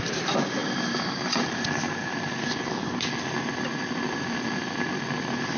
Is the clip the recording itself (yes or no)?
yes